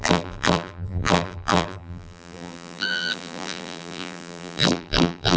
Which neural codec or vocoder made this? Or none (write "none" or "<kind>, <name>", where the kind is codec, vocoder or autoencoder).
vocoder, BigVGAN v2